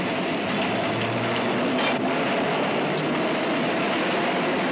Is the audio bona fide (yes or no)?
yes